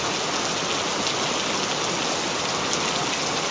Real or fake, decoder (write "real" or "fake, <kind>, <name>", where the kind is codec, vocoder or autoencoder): real